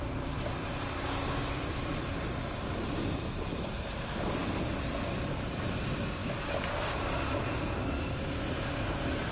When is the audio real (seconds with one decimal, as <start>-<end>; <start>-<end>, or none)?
4.4-9.3